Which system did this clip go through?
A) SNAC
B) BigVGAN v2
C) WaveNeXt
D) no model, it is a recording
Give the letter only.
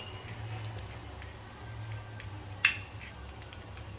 D